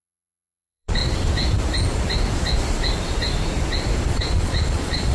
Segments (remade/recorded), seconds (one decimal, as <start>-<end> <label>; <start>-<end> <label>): 0.0-1.0 remade; 1.0-4.1 recorded; 4.1-5.1 remade